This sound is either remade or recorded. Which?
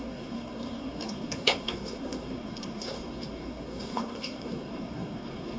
remade